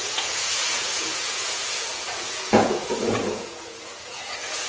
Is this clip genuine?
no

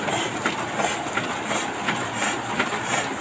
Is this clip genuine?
yes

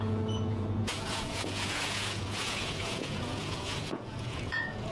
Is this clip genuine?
no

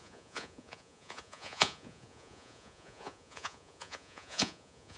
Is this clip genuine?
no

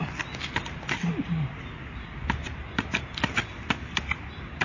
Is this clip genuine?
yes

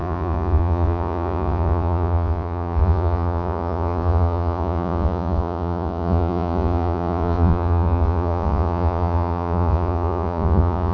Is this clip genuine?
no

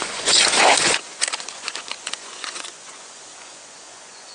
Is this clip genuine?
no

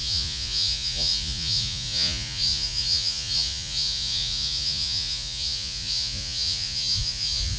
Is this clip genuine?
no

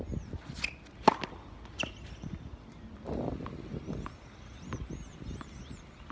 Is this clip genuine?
yes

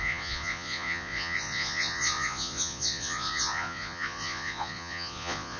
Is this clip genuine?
no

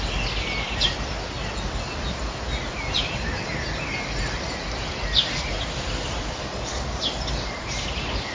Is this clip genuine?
yes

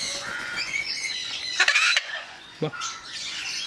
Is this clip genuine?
no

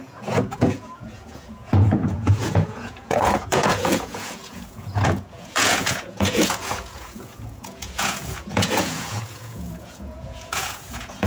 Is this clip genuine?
no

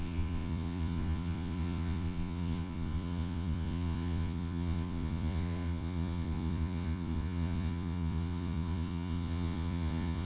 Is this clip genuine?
no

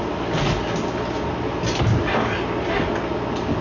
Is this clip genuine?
yes